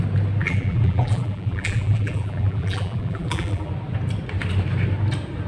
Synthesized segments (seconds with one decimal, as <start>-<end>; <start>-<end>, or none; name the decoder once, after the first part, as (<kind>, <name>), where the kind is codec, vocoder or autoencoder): 0.4-3.7 (vocoder, BigVGAN v2)